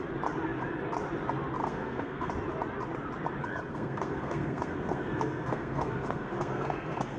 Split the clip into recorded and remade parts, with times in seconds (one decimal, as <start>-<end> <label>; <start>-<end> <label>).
0.0-1.6 recorded; 1.6-2.3 remade; 2.3-3.7 recorded; 3.7-7.2 remade